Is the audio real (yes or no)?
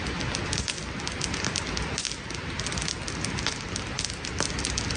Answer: yes